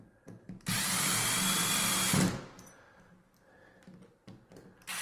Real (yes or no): yes